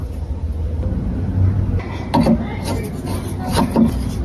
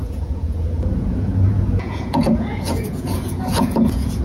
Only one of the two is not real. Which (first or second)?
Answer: second